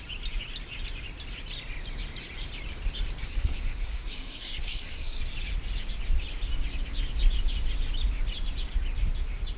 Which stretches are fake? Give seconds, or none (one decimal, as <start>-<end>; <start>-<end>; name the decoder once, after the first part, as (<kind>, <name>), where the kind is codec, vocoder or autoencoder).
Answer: 3.2-5.2 (codec, SNAC)